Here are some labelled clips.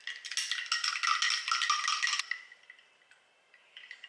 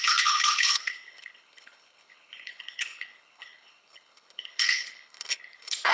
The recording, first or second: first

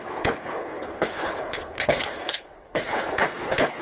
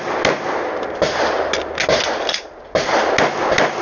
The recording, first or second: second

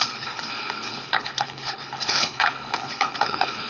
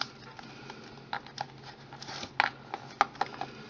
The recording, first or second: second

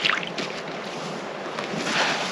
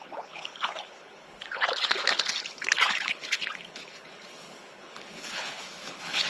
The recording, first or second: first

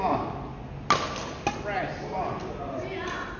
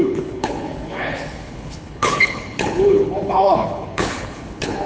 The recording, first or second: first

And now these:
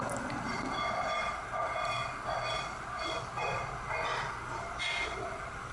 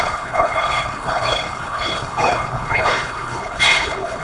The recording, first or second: first